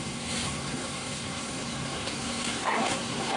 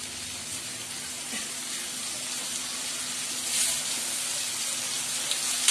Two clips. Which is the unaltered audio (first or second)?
second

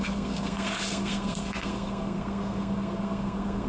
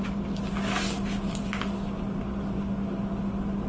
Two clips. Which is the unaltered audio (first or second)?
second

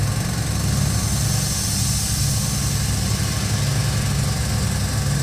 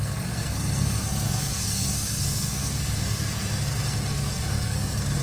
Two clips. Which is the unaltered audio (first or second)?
first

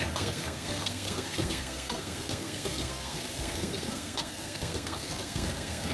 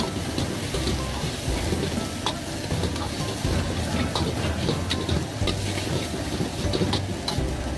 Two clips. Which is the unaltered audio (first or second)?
second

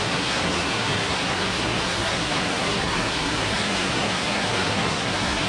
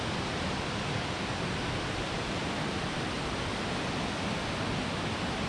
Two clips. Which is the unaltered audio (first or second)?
second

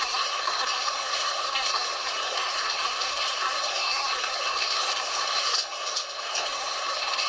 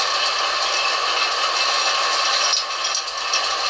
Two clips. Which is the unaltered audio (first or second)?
second